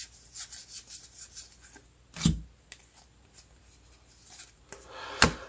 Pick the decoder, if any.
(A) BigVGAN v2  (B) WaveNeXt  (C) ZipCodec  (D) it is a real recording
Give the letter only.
D